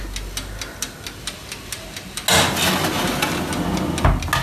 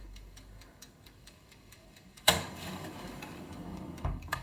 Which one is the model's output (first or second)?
second